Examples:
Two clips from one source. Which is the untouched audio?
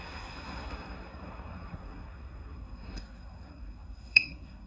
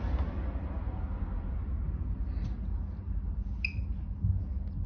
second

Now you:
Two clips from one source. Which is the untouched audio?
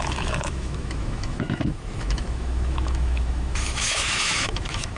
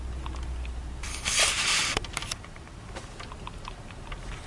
second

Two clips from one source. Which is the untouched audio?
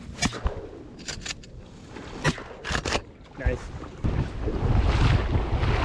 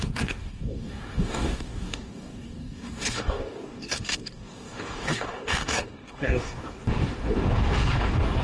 first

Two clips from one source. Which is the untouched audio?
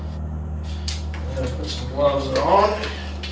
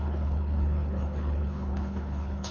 first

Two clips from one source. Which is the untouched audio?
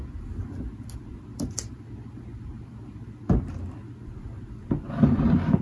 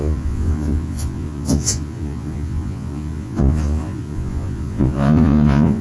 first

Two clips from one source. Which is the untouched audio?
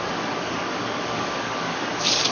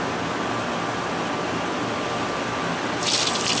second